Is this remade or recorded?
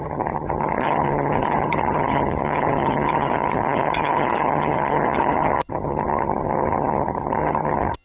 remade